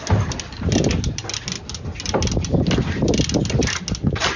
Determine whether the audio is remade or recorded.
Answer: recorded